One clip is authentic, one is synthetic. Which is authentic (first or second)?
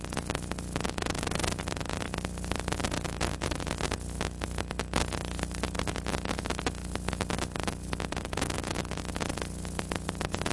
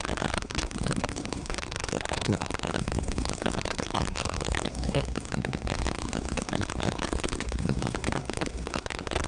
first